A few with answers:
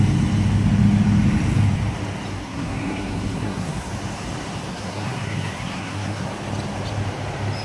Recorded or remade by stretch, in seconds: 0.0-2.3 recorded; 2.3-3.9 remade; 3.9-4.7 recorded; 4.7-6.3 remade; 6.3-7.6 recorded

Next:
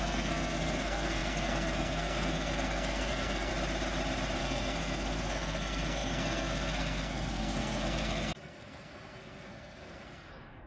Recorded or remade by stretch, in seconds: 0.0-3.5 remade; 3.5-4.4 recorded; 4.4-10.7 remade